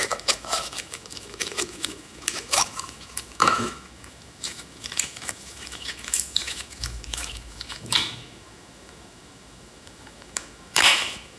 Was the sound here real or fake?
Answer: fake